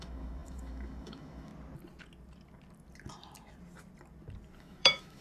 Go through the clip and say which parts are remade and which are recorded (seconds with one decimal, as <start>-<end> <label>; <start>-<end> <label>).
0.0-1.5 remade; 1.5-4.6 recorded; 4.6-5.2 remade